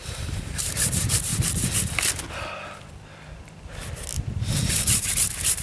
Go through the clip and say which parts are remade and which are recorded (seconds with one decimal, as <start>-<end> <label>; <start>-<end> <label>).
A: 0.0-1.3 remade; 1.3-4.7 recorded; 4.7-5.6 remade

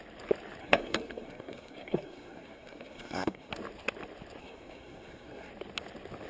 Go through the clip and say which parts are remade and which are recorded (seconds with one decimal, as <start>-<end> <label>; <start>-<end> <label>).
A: 0.0-0.6 recorded; 0.6-3.5 remade; 3.5-4.4 recorded; 4.4-5.5 remade; 5.5-6.3 recorded

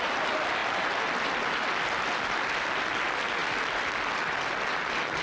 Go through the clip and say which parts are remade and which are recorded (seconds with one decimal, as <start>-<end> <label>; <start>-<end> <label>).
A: 0.0-5.2 recorded

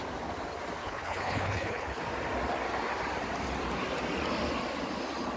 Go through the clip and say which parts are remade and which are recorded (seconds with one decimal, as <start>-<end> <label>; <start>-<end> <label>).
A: 0.0-0.8 recorded; 0.8-2.0 remade; 2.0-5.4 recorded